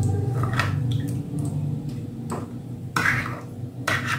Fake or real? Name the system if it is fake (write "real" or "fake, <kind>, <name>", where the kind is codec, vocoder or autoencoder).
real